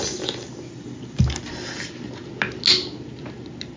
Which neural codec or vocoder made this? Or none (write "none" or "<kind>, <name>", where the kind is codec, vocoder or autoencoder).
none